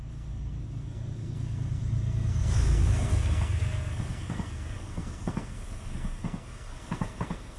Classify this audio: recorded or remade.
remade